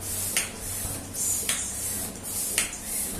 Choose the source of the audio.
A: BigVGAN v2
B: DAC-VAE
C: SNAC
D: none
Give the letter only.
D